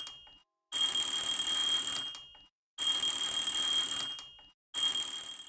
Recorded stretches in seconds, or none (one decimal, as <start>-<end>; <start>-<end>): 0.0-5.5